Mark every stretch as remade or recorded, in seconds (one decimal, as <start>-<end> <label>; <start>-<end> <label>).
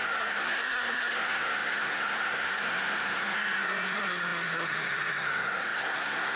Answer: 0.0-6.4 remade